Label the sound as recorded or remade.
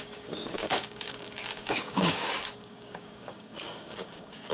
remade